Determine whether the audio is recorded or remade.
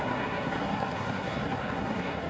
remade